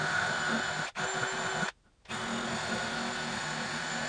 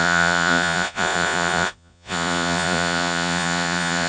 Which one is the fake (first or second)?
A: second